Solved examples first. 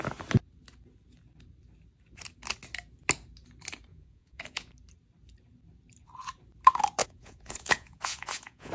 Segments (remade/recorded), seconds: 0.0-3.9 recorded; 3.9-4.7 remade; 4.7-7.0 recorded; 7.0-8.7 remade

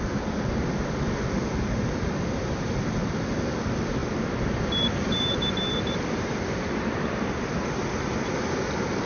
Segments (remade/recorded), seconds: 0.0-4.0 recorded; 4.0-8.3 remade; 8.3-9.1 recorded